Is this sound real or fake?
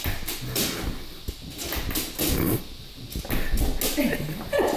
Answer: real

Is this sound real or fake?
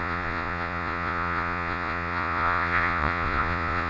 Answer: fake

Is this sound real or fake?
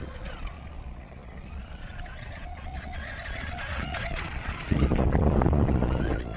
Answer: fake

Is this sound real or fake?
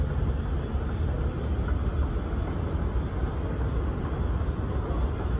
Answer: real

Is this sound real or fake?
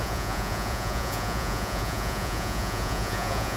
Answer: fake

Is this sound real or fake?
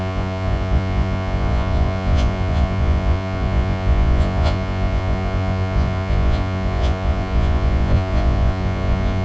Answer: fake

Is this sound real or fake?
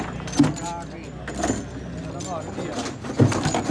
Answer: real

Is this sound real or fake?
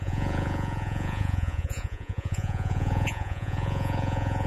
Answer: fake